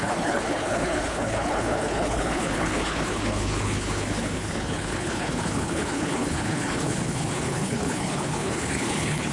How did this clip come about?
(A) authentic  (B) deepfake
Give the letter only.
B